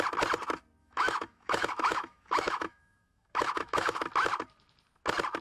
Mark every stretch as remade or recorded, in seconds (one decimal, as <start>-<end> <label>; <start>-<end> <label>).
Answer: 0.0-0.8 recorded; 0.8-4.0 remade; 4.0-5.4 recorded